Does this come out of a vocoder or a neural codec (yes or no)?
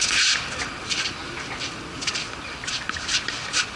no